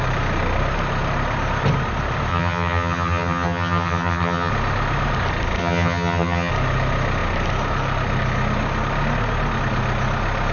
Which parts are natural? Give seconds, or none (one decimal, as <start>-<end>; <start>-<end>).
0.0-2.3; 4.5-5.6; 6.5-10.5